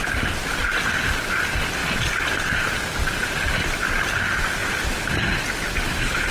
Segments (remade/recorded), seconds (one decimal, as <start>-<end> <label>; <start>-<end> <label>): 0.0-6.3 recorded